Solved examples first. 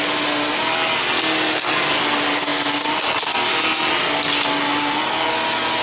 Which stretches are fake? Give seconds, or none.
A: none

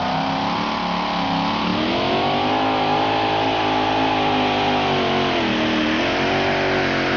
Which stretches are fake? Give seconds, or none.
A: none